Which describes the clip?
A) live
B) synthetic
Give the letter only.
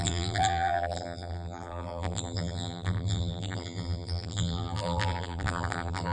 B